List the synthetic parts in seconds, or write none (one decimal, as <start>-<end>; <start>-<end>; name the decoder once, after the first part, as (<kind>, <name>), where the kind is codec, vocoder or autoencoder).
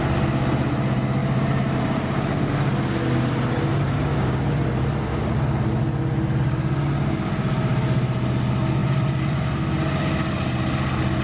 1.2-2.5 (vocoder, BigVGAN v2); 3.7-4.4; 8.8-9.4